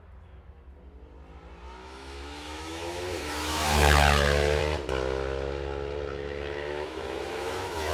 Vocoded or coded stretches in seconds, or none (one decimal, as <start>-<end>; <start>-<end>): 1.8-4.6; 6.1-7.9